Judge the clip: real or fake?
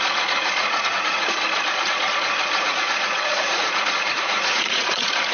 fake